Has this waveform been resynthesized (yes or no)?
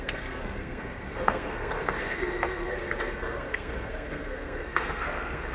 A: yes